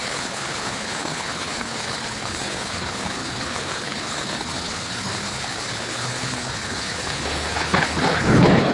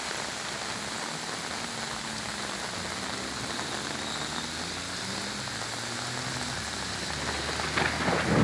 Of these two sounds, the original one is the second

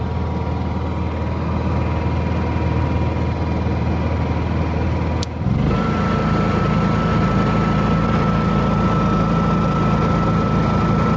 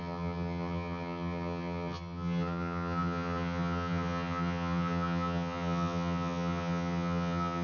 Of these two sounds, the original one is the first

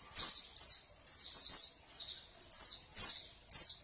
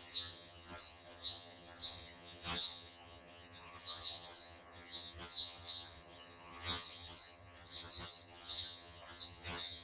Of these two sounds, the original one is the first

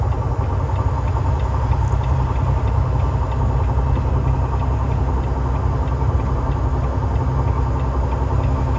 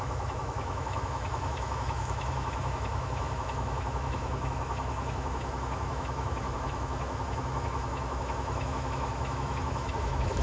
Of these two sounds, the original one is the first